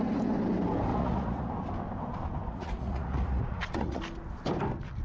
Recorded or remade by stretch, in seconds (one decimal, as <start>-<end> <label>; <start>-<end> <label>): 0.0-0.9 recorded; 0.9-1.5 remade; 1.5-2.5 recorded; 2.5-4.0 remade; 4.0-5.0 recorded